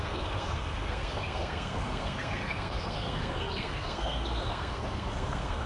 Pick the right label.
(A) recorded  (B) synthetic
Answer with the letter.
B